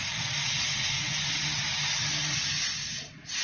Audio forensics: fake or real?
real